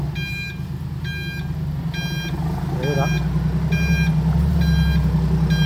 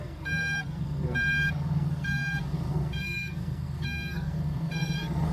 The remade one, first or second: second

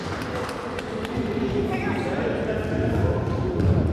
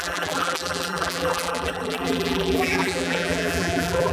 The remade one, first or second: second